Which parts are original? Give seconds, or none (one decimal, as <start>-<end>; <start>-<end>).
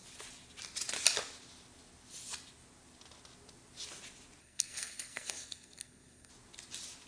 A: 0.0-4.4; 6.3-7.1